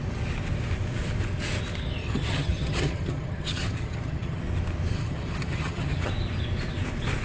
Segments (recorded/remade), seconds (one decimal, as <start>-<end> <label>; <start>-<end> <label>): 0.0-2.0 recorded; 2.0-4.4 remade; 4.4-4.9 recorded; 4.9-6.1 remade; 6.1-7.2 recorded